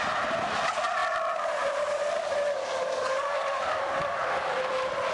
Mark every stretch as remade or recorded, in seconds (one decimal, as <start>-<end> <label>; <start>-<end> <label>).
0.0-2.6 recorded; 2.6-4.5 remade; 4.5-5.1 recorded